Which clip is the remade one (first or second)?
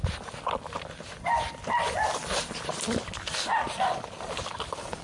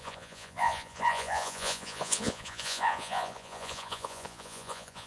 second